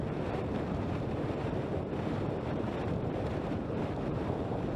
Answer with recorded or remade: remade